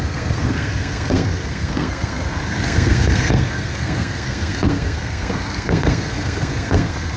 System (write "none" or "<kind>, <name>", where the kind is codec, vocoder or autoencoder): codec, SNAC